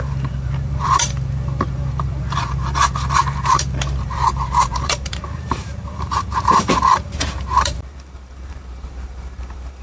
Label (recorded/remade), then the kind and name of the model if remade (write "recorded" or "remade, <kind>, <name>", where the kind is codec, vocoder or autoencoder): remade, vocoder, BigVGAN v2